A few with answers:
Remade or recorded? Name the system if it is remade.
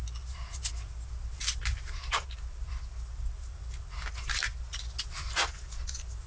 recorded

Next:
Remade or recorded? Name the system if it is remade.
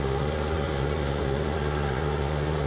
remade, vocoder, Vocos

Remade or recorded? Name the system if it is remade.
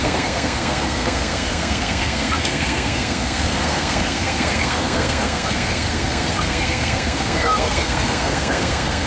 remade, codec, SNAC